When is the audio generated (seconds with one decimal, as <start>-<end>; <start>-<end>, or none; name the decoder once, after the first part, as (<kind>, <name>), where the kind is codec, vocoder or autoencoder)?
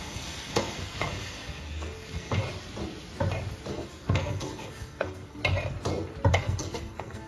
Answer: 0.0-2.4 (codec, SNAC); 3.7-5.4; 6.3-7.3